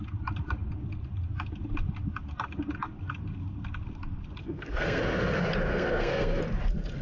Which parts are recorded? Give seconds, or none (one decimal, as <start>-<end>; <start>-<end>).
0.0-4.4; 5.0-5.7; 6.4-7.0